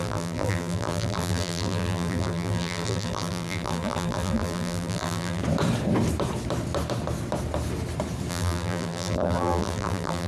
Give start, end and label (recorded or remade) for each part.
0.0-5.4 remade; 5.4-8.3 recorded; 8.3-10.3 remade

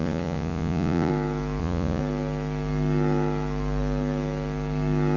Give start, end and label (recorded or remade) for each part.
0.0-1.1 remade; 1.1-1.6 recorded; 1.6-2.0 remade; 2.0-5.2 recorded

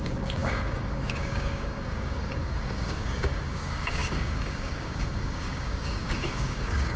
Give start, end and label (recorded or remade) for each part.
0.0-7.0 remade